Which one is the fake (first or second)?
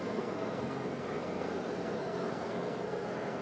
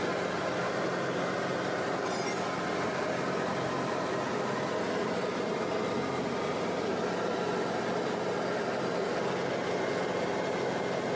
first